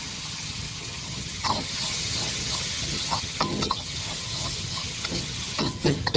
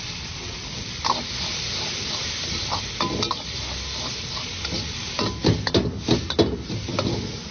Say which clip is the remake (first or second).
first